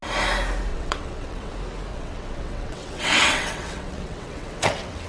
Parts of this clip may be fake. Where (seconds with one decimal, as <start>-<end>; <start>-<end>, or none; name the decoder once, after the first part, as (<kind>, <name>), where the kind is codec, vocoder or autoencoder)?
0.7-1.5 (vocoder, WaveNeXt); 1.9-5.1